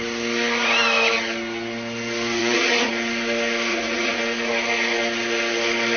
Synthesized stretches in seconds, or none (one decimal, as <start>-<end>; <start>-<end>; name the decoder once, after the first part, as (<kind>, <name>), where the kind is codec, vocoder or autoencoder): 2.4-2.9 (vocoder, Vocos); 3.7-4.2